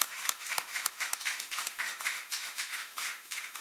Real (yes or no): no